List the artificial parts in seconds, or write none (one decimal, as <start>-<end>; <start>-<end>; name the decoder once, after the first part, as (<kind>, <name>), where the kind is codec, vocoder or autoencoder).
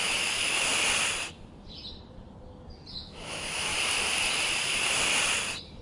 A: 0.0-0.7 (autoencoder, DAC-VAE); 2.9-3.7